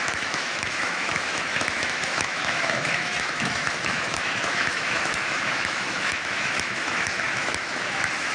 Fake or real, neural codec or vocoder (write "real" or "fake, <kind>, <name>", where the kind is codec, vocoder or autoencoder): fake, autoencoder, DAC-VAE